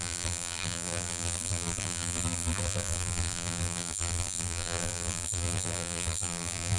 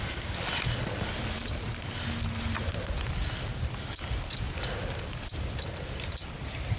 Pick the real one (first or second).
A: second